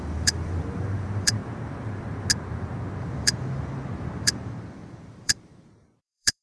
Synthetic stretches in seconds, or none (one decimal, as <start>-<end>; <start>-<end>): 0.0-1.4; 3.0-6.4